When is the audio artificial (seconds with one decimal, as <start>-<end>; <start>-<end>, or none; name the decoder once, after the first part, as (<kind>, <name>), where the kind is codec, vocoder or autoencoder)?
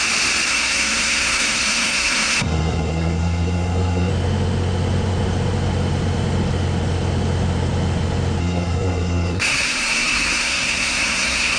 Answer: 0.5-4.1 (codec, SNAC); 8.4-11.6